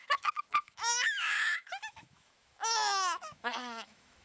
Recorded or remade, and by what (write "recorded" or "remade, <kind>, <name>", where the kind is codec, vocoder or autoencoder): remade, autoencoder, DAC-VAE